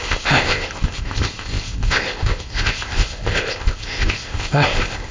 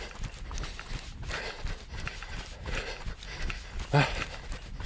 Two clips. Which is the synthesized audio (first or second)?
first